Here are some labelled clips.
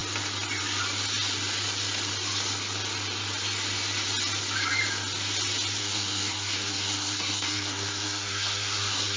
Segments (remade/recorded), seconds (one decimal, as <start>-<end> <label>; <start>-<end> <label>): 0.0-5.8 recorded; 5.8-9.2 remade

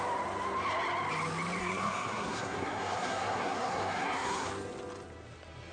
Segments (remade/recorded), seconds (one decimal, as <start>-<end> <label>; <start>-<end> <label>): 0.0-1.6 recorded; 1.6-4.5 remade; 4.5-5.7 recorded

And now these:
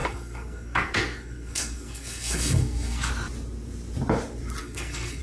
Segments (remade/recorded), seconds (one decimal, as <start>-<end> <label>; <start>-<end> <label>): 0.0-3.1 remade; 3.1-4.6 recorded; 4.6-5.2 remade